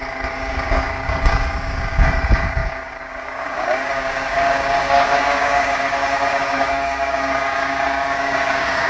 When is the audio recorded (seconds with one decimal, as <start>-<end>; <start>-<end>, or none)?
none